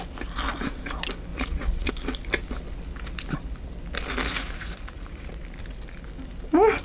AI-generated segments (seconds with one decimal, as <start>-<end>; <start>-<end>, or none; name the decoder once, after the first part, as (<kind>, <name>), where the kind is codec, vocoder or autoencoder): 1.3-1.9 (vocoder, Vocos); 4.3-5.4